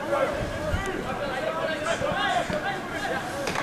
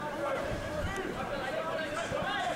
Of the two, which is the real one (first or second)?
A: first